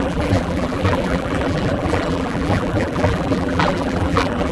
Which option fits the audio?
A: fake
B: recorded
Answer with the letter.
A